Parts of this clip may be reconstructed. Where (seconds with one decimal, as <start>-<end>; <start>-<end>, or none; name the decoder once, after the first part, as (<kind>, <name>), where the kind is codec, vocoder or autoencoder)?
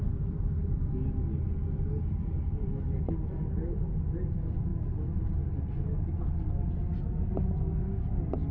none